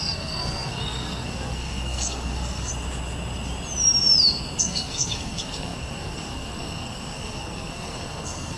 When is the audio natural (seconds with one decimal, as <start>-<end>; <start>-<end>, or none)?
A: 2.7-4.6

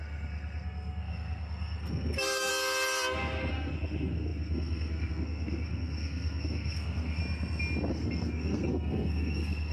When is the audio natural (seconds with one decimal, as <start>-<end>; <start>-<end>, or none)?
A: 2.5-3.5; 7.2-7.9

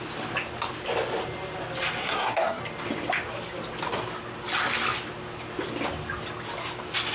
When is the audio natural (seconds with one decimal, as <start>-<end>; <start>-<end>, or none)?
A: 0.0-2.0; 2.6-7.1

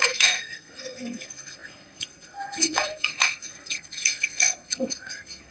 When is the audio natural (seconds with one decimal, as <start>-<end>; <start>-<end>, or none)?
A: none

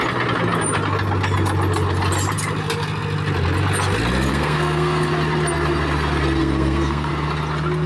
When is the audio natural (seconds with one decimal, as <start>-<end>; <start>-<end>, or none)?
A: 0.0-4.3; 5.1-6.4; 7.1-7.9

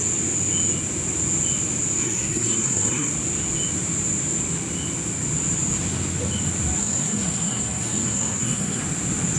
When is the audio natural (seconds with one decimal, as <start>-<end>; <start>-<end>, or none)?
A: 0.0-2.0; 3.1-6.8; 8.8-9.4

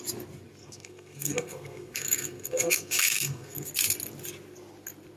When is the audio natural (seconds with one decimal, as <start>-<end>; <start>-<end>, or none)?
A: 0.0-0.6; 3.7-5.2